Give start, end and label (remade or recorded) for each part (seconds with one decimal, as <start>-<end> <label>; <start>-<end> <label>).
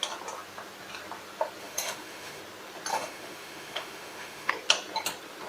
0.0-1.6 recorded; 1.6-2.4 remade; 2.4-2.9 recorded; 2.9-4.5 remade; 4.5-5.5 recorded